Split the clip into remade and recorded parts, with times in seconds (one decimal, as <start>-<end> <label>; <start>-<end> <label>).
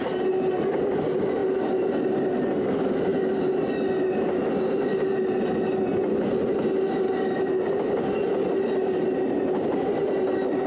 0.0-10.7 recorded